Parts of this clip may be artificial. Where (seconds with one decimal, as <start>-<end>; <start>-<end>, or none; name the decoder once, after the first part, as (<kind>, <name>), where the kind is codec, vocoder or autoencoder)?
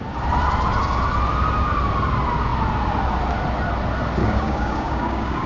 4.2-5.5 (codec, DAC)